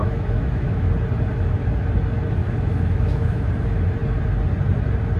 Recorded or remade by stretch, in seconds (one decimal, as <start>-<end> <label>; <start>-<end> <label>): 0.0-0.9 remade; 0.9-2.4 recorded; 2.4-3.5 remade; 3.5-5.2 recorded